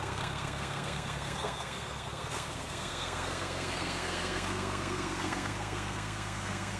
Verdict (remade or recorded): remade